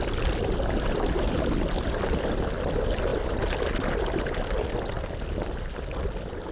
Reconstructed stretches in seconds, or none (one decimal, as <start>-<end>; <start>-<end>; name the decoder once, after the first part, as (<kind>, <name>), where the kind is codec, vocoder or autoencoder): none